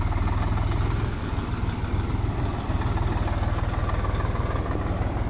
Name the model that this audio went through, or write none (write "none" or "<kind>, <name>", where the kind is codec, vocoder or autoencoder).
none